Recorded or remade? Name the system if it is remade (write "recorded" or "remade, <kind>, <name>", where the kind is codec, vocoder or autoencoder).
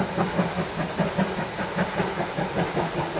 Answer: recorded